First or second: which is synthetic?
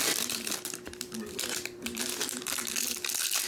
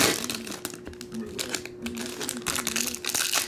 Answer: first